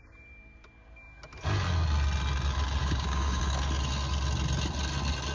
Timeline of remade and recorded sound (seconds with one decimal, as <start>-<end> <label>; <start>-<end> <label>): 0.0-2.8 recorded; 2.8-3.4 remade; 3.4-5.3 recorded